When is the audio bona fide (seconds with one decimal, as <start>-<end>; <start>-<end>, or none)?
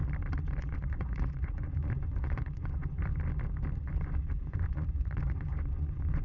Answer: 0.0-0.6; 3.1-3.7